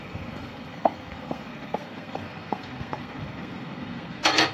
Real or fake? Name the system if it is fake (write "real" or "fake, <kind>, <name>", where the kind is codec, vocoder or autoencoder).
fake, codec, SNAC